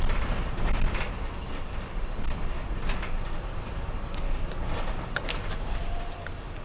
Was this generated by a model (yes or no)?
no